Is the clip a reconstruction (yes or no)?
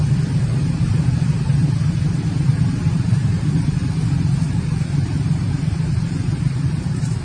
yes